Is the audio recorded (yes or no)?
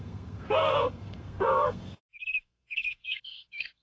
no